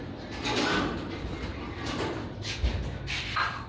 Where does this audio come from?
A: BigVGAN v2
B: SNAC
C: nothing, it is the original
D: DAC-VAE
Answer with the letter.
C